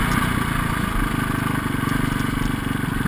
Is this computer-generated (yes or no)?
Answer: no